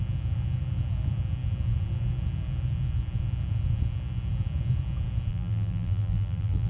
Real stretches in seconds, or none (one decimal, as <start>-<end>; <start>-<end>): 0.0-5.3